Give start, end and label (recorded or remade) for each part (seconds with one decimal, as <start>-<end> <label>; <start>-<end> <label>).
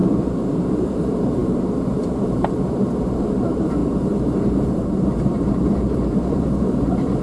0.0-7.2 remade